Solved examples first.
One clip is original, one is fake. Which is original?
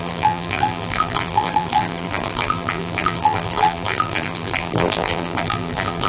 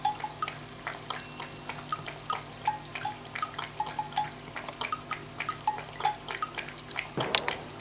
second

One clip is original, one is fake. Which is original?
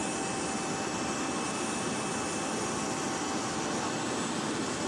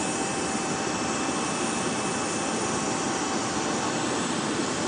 first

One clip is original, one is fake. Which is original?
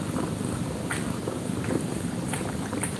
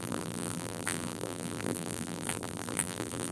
first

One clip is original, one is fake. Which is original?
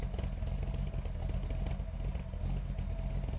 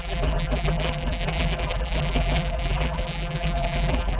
first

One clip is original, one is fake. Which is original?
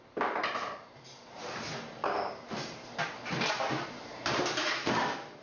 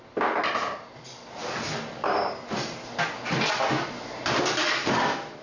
second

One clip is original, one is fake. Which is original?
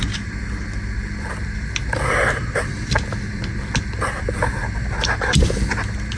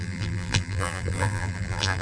first